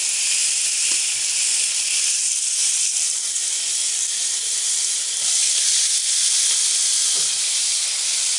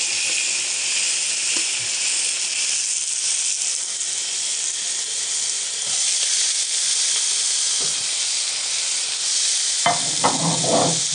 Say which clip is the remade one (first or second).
first